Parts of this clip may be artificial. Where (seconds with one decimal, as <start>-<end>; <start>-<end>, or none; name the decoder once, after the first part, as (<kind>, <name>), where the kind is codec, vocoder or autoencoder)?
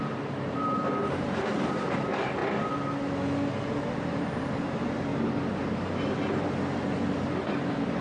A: 0.0-2.4 (vocoder, BigVGAN v2); 3.7-5.1; 7.1-8.0